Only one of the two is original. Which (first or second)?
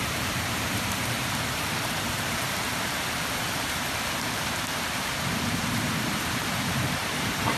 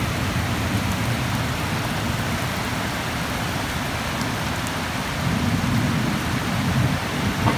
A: second